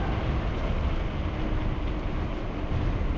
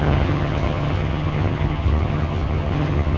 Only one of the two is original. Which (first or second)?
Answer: first